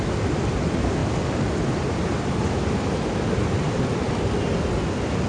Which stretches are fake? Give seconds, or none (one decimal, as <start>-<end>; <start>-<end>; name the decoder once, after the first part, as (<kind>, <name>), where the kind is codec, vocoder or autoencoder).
1.0-3.8 (vocoder, BigVGAN v2)